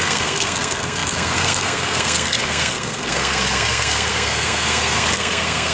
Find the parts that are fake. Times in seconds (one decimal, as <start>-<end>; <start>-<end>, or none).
0.0-5.7